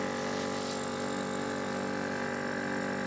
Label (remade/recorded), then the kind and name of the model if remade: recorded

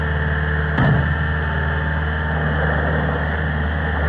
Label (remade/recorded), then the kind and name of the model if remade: recorded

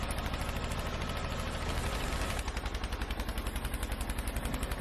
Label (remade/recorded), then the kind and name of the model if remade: recorded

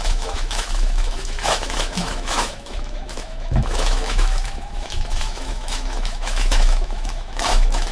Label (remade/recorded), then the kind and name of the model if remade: remade, autoencoder, DAC-VAE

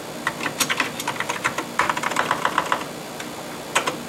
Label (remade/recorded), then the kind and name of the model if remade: recorded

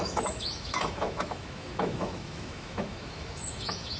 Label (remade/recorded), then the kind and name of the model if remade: remade, autoencoder, DAC-VAE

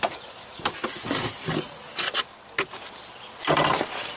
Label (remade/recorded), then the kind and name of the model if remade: recorded